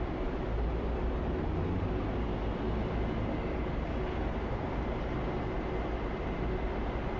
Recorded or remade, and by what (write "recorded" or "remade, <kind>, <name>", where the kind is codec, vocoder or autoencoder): recorded